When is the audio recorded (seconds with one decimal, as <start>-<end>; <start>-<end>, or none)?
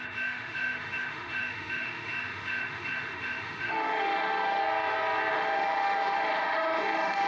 4.6-5.3